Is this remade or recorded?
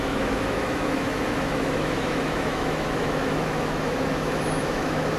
remade